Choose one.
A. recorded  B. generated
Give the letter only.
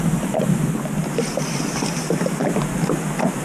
A